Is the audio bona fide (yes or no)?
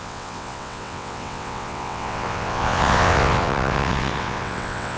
no